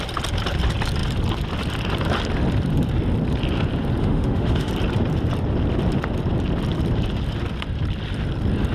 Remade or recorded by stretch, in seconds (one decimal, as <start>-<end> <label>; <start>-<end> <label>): 0.0-4.0 recorded; 4.0-4.7 remade; 4.7-8.7 recorded

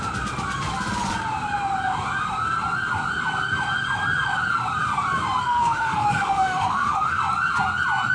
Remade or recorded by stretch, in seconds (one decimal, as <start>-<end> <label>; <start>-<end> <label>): 0.0-5.4 recorded; 5.4-7.2 remade; 7.2-8.1 recorded

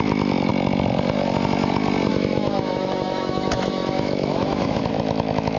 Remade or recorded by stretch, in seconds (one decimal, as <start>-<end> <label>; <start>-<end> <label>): 0.0-0.5 remade; 0.5-2.1 recorded; 2.1-5.6 remade